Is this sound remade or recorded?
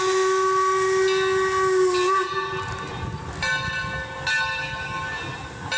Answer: recorded